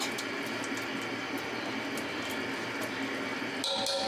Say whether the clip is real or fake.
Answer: real